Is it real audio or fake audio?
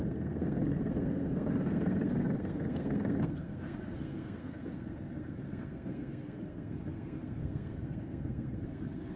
fake